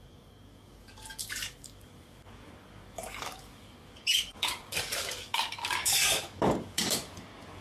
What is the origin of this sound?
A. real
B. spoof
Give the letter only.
B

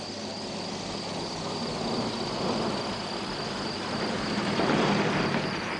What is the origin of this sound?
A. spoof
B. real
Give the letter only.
B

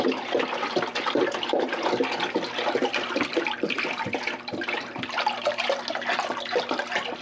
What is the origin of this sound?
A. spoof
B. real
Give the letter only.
B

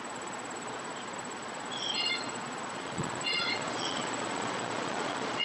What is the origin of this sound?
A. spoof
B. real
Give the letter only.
A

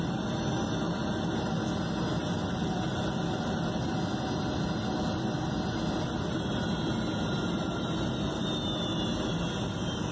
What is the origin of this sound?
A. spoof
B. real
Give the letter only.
B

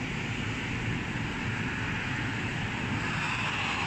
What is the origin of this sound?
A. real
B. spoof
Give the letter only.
A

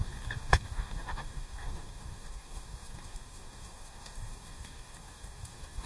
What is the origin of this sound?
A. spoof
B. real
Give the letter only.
A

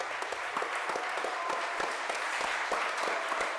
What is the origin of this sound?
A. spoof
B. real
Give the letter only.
B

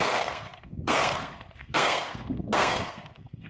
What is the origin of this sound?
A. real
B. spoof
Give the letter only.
B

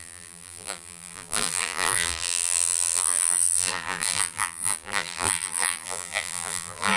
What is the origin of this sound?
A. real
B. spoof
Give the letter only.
B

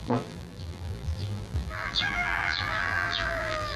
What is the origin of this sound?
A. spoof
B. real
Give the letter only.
A